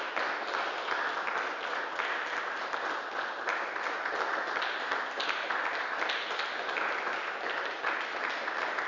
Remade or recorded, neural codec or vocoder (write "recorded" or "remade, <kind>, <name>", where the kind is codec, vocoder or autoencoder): recorded